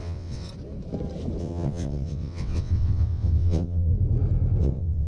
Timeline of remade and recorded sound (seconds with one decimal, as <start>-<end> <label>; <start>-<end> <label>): 0.0-0.5 remade; 0.5-1.4 recorded; 1.4-3.9 remade; 3.9-4.6 recorded; 4.6-5.1 remade